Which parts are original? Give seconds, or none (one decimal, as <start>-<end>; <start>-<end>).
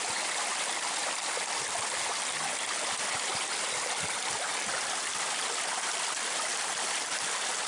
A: 0.0-7.7